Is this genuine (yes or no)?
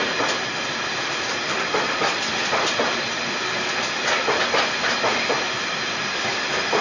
yes